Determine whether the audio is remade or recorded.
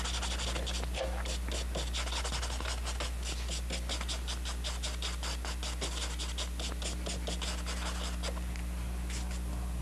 recorded